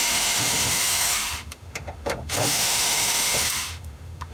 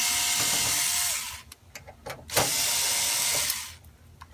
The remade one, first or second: first